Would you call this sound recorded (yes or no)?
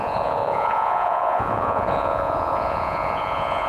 no